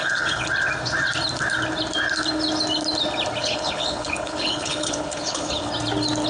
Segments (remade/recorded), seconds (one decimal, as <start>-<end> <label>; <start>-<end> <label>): 0.0-0.5 remade; 0.5-3.4 recorded; 3.4-5.7 remade; 5.7-6.3 recorded